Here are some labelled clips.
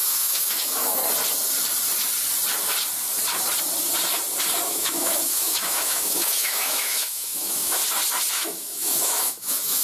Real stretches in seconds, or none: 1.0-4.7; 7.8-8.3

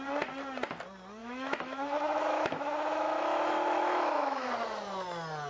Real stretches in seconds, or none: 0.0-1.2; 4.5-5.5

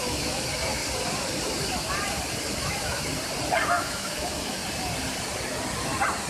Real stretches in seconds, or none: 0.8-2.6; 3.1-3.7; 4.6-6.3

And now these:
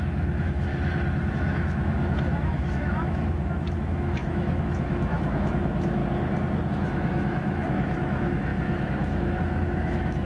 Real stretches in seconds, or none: 0.7-1.3; 6.0-6.7

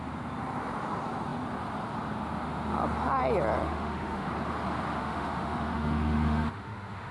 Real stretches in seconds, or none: 0.0-3.6; 4.3-5.0